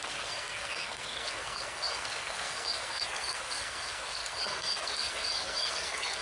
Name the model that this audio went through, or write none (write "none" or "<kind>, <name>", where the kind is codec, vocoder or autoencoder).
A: codec, SNAC